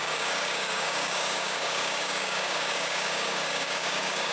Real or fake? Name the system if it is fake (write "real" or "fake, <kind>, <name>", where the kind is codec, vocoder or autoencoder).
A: fake, codec, DAC